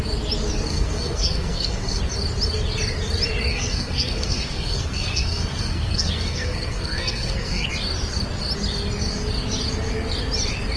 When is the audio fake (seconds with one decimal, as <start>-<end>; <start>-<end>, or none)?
0.7-2.0; 3.5-7.7